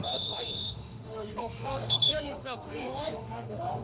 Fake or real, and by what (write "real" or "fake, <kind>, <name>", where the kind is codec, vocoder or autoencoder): fake, autoencoder, DAC-VAE